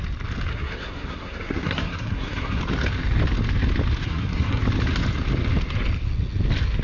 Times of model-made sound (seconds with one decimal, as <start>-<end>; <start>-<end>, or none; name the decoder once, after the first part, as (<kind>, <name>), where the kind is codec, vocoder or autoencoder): 0.5-2.6 (codec, SNAC); 4.0-4.6